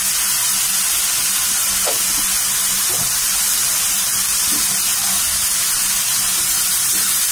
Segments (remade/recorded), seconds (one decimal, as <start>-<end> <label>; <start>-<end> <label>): 0.0-7.3 recorded